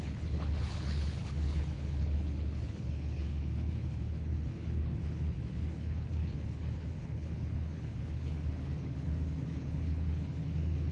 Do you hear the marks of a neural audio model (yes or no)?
yes